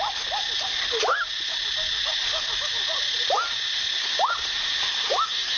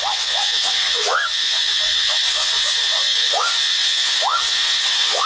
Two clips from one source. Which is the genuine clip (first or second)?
first